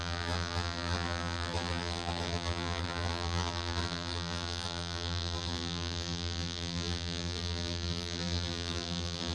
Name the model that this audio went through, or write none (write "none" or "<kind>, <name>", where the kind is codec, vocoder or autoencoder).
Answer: vocoder, BigVGAN v2